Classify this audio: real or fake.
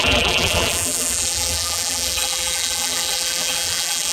fake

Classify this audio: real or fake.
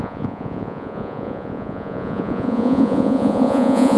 fake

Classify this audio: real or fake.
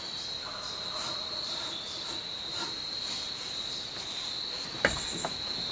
real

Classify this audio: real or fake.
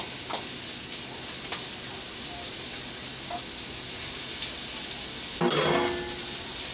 real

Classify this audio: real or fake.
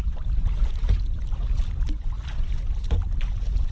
real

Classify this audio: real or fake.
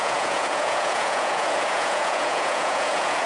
fake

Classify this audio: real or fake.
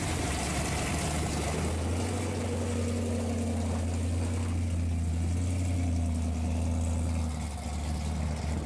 real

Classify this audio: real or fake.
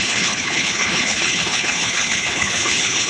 fake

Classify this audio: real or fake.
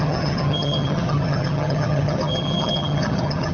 fake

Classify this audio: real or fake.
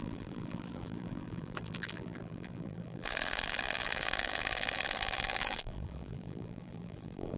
fake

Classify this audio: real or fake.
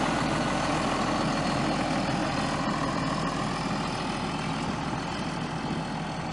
real